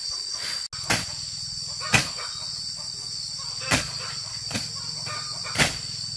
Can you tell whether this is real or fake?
real